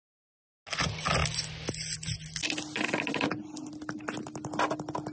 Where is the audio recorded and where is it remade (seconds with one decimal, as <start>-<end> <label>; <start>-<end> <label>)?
0.0-5.1 recorded